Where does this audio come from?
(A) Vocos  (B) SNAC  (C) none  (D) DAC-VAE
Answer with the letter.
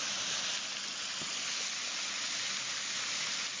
C